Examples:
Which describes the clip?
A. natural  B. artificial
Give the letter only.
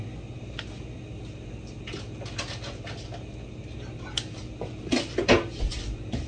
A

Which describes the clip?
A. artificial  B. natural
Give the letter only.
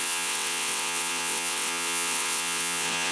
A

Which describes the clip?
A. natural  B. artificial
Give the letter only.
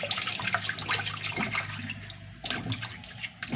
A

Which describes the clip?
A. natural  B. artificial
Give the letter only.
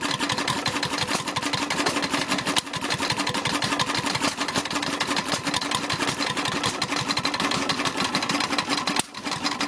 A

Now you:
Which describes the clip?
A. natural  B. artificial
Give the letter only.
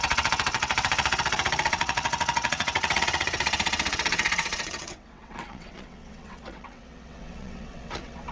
B